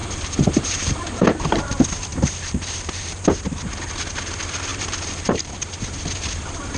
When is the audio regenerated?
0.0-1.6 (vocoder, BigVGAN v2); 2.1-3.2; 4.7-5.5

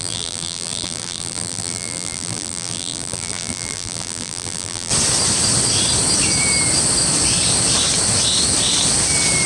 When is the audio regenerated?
0.0-4.9 (vocoder, BigVGAN v2)

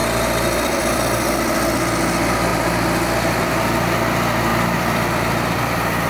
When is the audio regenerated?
0.0-1.8 (vocoder, BigVGAN v2); 2.5-3.5; 4.5-6.1

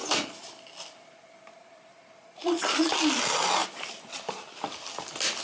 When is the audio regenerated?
3.6-5.4 (vocoder, BigVGAN v2)

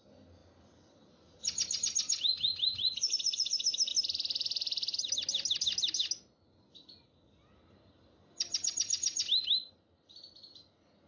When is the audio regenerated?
0.4-3.1 (vocoder, BigVGAN v2)

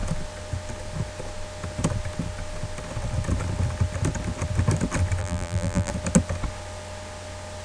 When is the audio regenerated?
5.2-5.9 (vocoder, BigVGAN v2)

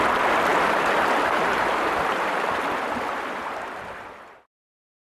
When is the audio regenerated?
none